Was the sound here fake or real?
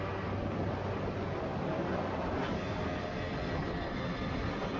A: real